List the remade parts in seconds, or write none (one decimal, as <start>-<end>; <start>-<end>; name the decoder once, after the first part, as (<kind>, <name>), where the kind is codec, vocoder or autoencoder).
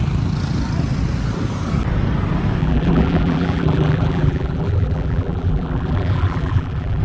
2.6-7.0 (vocoder, BigVGAN v2)